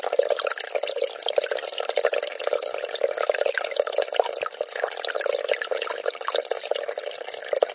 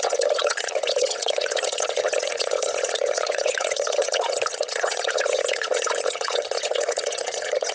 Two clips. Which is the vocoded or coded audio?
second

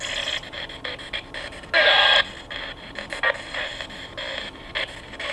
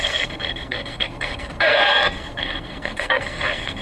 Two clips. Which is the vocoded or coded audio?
second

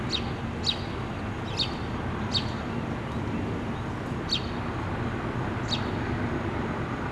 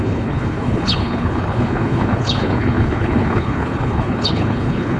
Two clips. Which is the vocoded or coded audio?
second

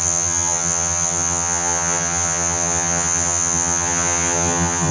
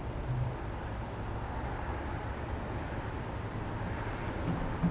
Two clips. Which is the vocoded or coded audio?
first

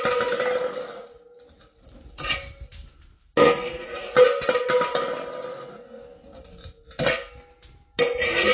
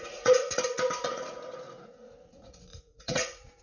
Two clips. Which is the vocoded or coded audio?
second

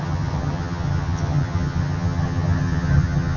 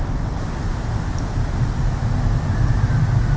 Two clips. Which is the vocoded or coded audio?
first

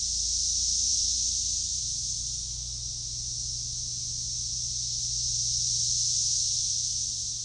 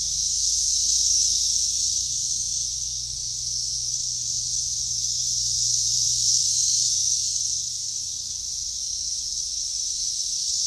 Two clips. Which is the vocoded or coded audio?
second